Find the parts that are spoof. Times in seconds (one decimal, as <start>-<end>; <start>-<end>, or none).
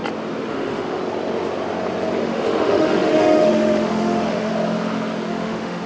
0.5-1.0; 2.2-4.5; 5.3-5.9